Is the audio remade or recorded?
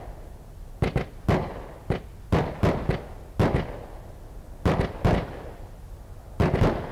recorded